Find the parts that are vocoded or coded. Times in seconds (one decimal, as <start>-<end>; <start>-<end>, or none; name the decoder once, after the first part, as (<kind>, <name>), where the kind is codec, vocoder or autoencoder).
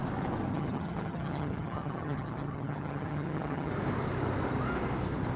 0.5-3.7 (vocoder, HiFi-GAN)